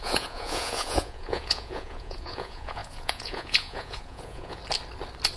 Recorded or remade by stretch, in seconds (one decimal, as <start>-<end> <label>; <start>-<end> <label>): 0.0-4.6 remade; 4.6-5.4 recorded